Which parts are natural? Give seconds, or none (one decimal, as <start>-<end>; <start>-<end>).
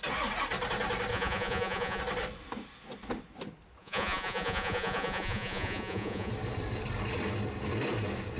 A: 0.0-1.1; 2.0-3.8; 6.3-8.4